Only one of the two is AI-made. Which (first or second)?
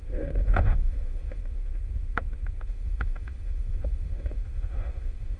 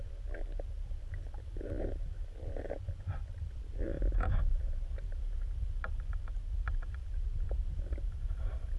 first